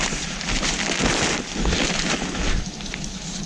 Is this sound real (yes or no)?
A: yes